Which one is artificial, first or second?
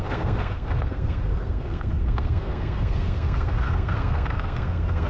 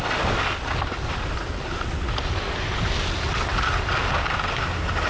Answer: first